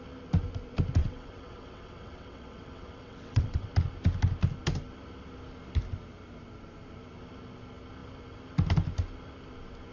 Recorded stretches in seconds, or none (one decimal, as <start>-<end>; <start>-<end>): 0.0-1.0; 3.7-9.9